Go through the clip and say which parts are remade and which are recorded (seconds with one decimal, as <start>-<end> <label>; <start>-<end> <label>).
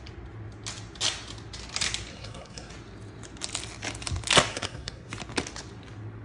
0.0-2.1 recorded; 2.1-2.7 remade; 2.7-4.5 recorded; 4.5-5.1 remade; 5.1-6.2 recorded